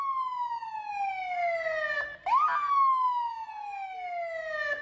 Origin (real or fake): real